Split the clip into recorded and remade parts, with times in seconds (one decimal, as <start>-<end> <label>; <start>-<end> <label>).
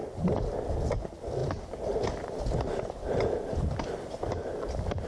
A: 0.0-5.1 recorded